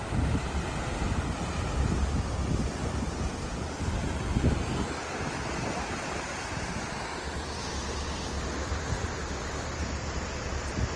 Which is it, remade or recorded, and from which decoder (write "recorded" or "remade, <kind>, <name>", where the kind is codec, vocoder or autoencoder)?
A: recorded